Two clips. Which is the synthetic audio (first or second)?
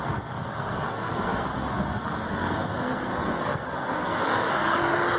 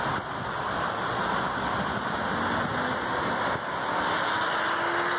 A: first